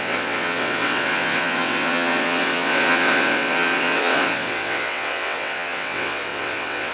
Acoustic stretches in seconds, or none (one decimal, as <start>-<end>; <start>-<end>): none